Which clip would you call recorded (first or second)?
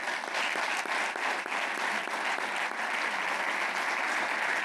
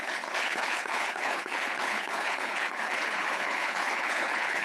first